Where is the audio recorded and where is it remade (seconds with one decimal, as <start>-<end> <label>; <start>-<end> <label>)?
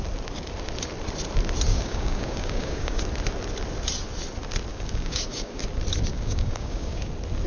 0.0-1.7 recorded; 1.7-3.0 remade; 3.0-4.7 recorded; 4.7-5.6 remade; 5.6-6.1 recorded; 6.1-7.1 remade; 7.1-7.5 recorded